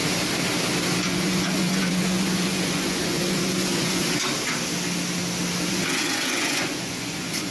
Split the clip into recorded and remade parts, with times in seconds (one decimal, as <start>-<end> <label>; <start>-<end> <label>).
0.0-1.0 recorded; 1.0-4.0 remade; 4.0-5.7 recorded; 5.7-7.5 remade